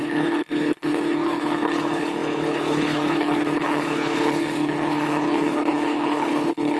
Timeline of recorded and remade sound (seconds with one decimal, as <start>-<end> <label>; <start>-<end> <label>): 0.0-6.8 remade